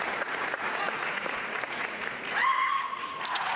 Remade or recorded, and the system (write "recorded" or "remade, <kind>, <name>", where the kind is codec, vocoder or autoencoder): remade, vocoder, Vocos